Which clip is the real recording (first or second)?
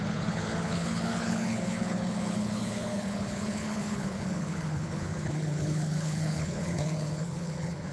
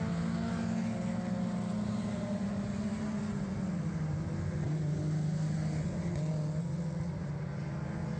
second